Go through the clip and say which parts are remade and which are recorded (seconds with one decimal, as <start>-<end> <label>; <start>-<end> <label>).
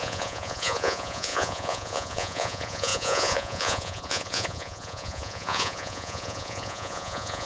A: 0.0-7.5 remade